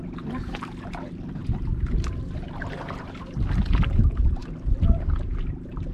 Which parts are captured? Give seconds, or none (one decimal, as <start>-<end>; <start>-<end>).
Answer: 0.0-5.9